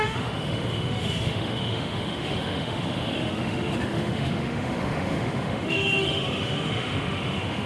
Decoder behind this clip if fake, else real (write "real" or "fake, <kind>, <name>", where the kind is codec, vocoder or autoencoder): fake, autoencoder, DAC-VAE